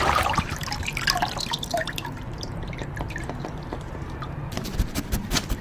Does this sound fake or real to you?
fake